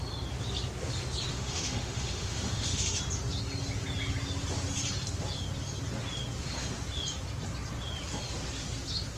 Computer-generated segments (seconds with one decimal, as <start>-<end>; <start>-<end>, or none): 1.3-3.0